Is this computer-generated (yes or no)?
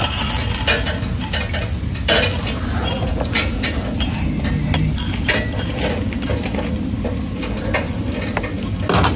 no